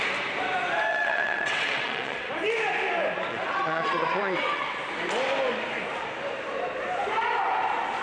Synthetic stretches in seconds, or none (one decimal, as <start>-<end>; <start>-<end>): 0.9-2.3; 3.3-4.8